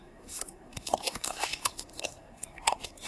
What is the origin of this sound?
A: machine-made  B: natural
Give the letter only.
A